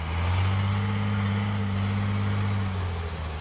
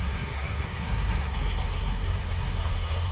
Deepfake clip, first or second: second